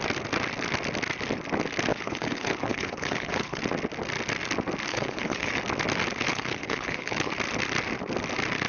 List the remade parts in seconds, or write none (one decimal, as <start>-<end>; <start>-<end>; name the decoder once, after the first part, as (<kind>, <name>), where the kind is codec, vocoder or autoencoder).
1.9-3.6 (codec, HILCodec); 4.9-5.5; 6.3-7.3